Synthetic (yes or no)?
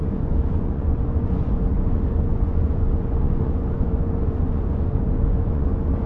yes